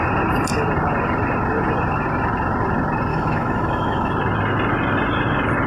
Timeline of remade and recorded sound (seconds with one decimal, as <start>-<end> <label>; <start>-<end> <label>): 0.0-3.1 recorded; 3.1-4.1 remade; 4.1-5.7 recorded